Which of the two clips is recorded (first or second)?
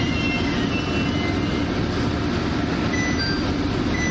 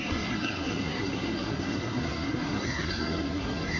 first